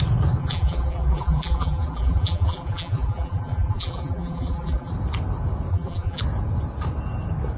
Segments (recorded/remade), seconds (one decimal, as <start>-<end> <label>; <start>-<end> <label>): 0.0-0.4 recorded; 0.4-4.9 remade; 4.9-5.7 recorded; 5.7-6.2 remade; 6.2-7.6 recorded